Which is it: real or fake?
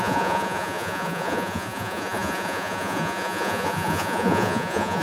fake